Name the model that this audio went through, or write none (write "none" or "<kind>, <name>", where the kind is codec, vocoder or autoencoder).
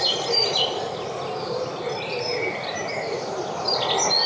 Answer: vocoder, BigVGAN v2